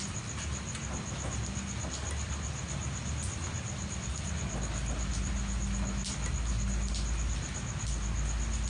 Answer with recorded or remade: recorded